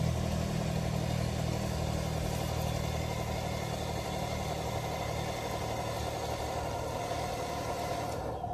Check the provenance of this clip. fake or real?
real